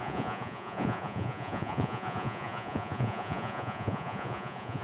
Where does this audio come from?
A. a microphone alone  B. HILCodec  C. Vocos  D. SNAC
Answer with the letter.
C